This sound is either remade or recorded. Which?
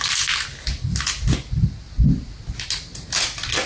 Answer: recorded